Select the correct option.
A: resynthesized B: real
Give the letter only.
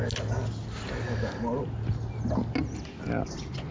B